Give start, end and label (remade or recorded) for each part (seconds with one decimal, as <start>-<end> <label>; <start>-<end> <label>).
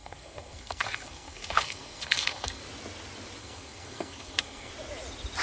0.0-2.6 remade; 2.6-3.4 recorded; 3.4-4.7 remade; 4.7-5.4 recorded